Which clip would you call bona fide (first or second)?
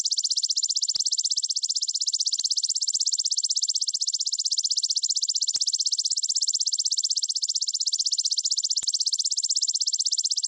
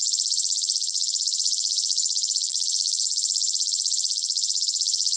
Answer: first